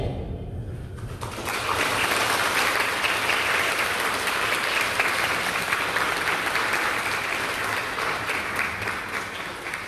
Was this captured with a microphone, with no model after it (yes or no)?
yes